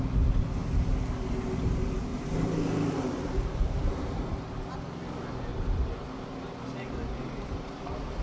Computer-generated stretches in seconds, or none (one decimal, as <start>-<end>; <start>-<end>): 2.1-4.6; 5.5-6.1